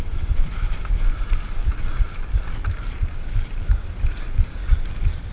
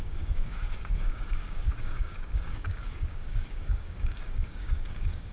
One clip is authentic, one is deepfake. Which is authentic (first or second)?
first